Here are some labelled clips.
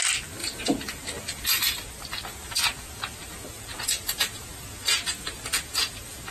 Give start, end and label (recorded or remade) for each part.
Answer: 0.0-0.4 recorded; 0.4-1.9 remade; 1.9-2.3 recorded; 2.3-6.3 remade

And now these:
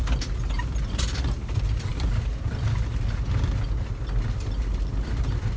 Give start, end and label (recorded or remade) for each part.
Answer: 0.0-5.6 recorded

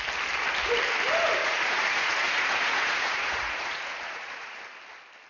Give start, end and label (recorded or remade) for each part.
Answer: 0.0-1.4 recorded; 1.4-4.6 remade; 4.6-5.3 recorded

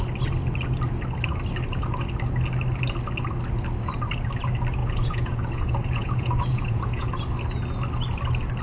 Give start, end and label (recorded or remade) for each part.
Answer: 0.0-4.8 recorded; 4.8-7.1 remade; 7.1-8.6 recorded

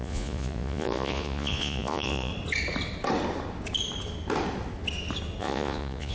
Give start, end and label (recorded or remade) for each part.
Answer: 0.0-2.3 remade; 2.3-5.4 recorded; 5.4-6.1 remade

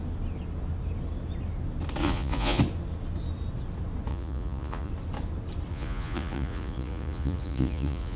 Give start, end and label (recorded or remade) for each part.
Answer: 0.0-2.0 recorded; 2.0-2.6 remade; 2.6-4.1 recorded; 4.1-4.9 remade; 4.9-5.7 recorded; 5.7-8.2 remade